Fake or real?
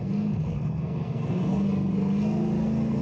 fake